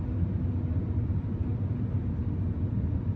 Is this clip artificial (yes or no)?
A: no